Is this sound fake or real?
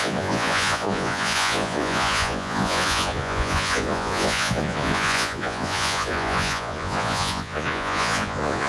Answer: fake